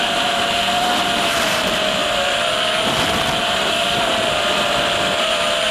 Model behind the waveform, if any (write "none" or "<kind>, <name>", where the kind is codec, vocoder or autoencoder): vocoder, BigVGAN v2